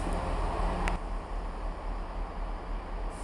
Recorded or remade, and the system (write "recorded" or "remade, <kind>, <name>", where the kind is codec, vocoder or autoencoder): recorded